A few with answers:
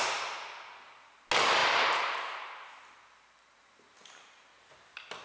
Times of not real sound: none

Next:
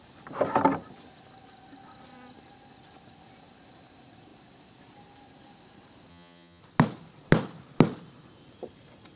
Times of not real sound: 6.1-6.6 (vocoder, HiFi-GAN)

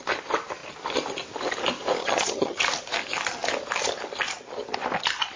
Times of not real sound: 2.0-2.6 (vocoder, HiFi-GAN)

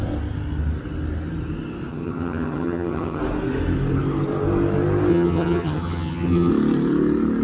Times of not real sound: 1.9-3.2 (vocoder, HiFi-GAN); 5.1-6.5

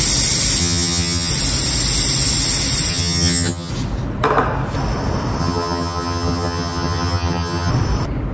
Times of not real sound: 0.6-1.3 (vocoder, HiFi-GAN); 2.9-3.7; 5.4-7.7

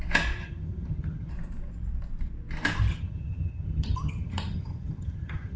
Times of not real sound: 0.4-1.3 (vocoder, HiFi-GAN); 2.9-5.6